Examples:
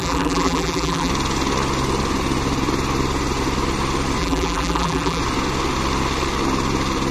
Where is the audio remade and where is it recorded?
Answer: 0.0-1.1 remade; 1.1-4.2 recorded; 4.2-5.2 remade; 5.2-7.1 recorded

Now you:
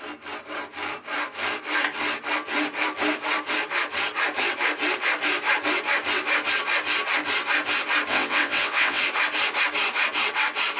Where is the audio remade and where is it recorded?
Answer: 0.0-8.1 recorded; 8.1-9.0 remade; 9.0-10.8 recorded

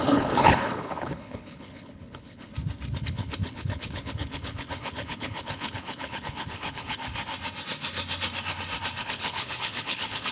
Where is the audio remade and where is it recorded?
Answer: 0.0-2.5 remade; 2.5-3.0 recorded; 3.0-7.0 remade; 7.0-9.0 recorded; 9.0-10.3 remade

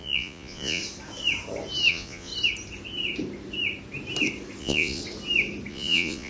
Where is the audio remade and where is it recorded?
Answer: 0.0-0.8 remade; 0.8-1.9 recorded; 1.9-2.3 remade; 2.3-4.6 recorded; 4.6-5.0 remade; 5.0-5.7 recorded; 5.7-6.3 remade